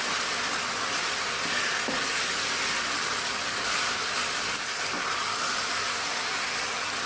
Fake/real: real